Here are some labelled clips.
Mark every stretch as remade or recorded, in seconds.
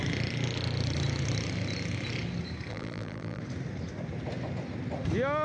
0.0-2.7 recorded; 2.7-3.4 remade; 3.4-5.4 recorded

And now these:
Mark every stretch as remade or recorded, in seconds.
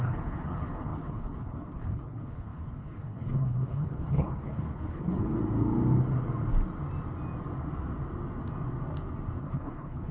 0.0-5.4 remade; 5.4-9.4 recorded; 9.4-10.1 remade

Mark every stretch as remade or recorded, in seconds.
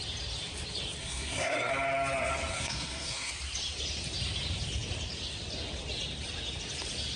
0.0-1.0 recorded; 1.0-1.7 remade; 1.7-2.5 recorded; 2.5-3.3 remade; 3.3-7.2 recorded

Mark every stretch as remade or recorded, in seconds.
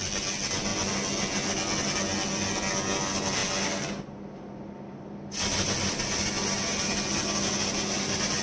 0.0-8.4 recorded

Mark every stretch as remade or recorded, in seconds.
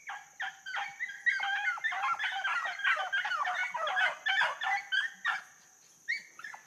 0.0-6.7 recorded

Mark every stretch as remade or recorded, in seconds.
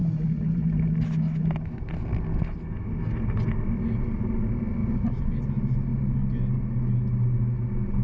0.0-0.8 remade; 0.8-4.8 recorded; 4.8-5.4 remade; 5.4-8.0 recorded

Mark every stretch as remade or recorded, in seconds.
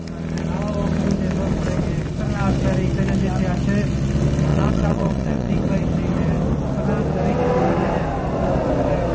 0.0-4.5 recorded; 4.5-5.5 remade; 5.5-9.1 recorded